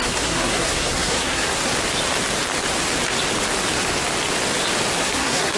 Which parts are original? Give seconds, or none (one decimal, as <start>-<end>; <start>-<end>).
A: 1.6-5.0